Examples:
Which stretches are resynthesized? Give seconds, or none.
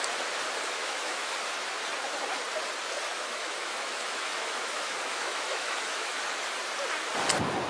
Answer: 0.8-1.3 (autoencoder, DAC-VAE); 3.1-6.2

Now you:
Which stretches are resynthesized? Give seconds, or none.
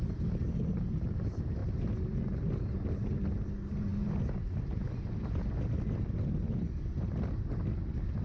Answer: none